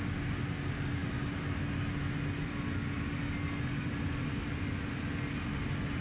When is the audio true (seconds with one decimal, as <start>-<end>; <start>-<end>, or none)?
0.0-6.0